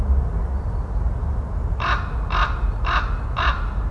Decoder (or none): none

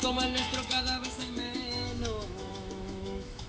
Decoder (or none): autoencoder, DAC-VAE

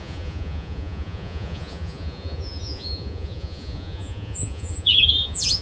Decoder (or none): vocoder, Vocos